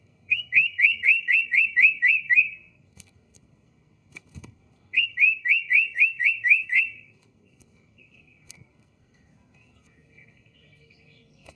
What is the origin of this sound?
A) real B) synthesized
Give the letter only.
B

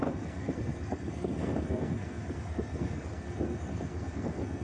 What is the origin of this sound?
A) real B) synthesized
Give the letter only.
B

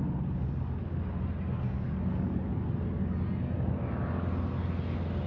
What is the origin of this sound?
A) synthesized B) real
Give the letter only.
B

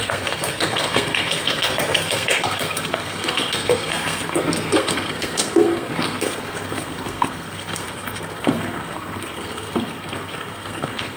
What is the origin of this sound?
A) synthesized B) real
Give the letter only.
A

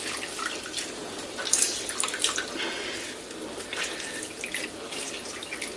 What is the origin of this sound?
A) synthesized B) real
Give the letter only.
B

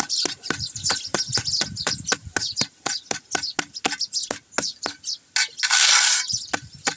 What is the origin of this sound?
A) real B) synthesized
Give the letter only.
A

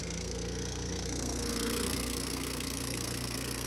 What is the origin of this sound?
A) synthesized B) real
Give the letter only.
A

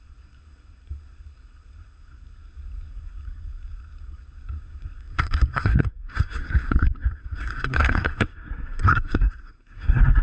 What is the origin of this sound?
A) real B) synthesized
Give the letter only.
B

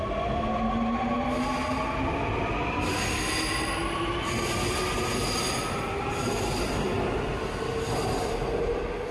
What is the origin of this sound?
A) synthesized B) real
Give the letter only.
B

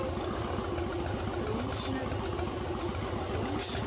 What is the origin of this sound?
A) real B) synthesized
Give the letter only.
A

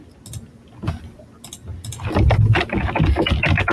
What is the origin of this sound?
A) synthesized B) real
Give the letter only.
B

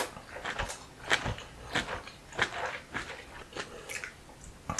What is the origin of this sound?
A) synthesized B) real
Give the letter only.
B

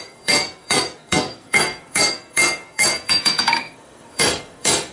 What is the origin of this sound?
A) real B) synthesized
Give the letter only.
B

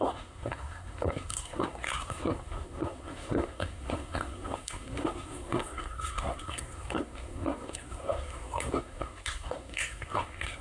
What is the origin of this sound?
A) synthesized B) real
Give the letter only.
A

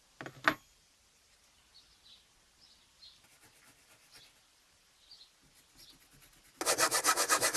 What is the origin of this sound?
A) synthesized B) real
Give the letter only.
B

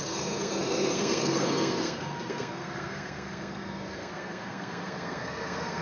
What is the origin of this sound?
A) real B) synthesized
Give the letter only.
B